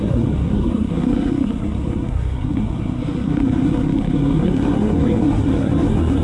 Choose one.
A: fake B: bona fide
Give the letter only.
A